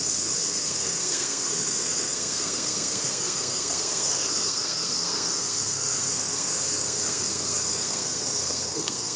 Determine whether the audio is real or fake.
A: fake